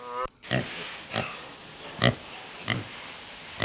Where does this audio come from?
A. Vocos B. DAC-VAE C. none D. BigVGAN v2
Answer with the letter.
C